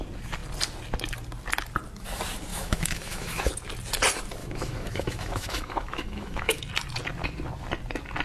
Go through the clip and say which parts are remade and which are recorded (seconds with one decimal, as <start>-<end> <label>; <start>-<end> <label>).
0.0-2.5 recorded; 2.5-3.5 remade; 3.5-4.4 recorded; 4.4-6.6 remade; 6.6-8.2 recorded